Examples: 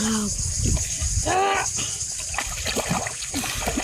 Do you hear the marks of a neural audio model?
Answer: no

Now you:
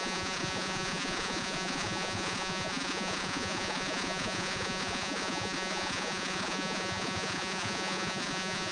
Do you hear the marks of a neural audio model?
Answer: yes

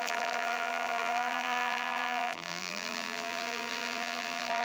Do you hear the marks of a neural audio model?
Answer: yes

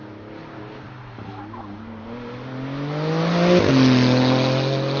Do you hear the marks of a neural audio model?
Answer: no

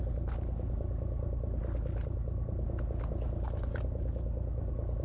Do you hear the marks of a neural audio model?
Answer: no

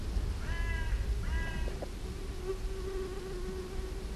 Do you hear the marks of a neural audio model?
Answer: no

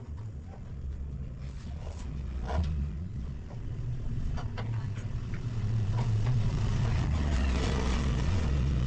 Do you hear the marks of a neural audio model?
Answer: yes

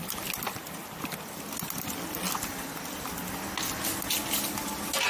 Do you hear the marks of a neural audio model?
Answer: no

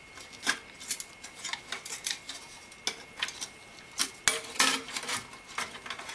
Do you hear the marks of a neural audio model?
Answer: no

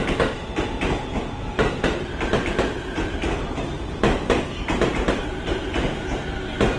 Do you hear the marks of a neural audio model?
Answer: no